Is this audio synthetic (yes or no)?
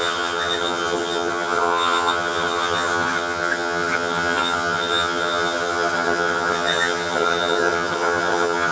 yes